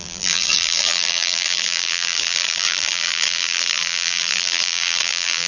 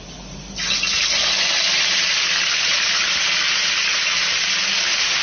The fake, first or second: first